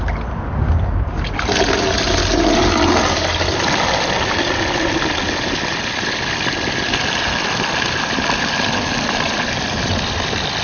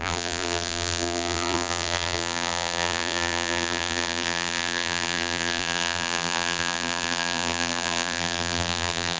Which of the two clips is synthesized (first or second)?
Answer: second